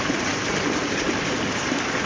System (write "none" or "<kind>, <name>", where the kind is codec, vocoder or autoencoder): none